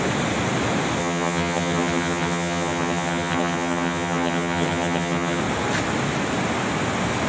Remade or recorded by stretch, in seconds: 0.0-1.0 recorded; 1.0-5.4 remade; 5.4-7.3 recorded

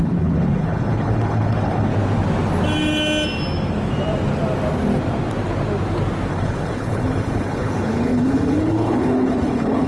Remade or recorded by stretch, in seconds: 0.0-1.9 remade; 1.9-6.3 recorded; 6.3-9.9 remade

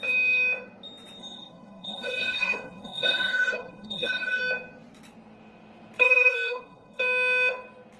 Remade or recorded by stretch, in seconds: 0.0-1.2 recorded; 1.2-4.4 remade; 4.4-6.0 recorded; 6.0-7.0 remade; 7.0-8.0 recorded

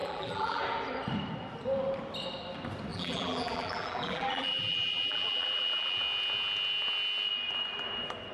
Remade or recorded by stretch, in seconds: 0.0-0.6 remade; 0.6-2.9 recorded; 2.9-6.0 remade; 6.0-8.3 recorded

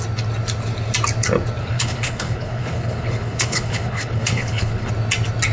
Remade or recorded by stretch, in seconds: 0.0-1.6 recorded; 1.6-4.9 remade; 4.9-5.5 recorded

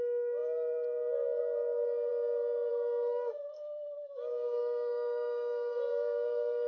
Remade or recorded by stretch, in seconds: 0.0-2.1 remade; 2.1-2.7 recorded; 2.7-6.7 remade

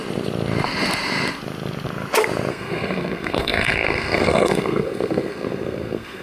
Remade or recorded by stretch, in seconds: 0.0-2.5 recorded; 2.5-6.2 remade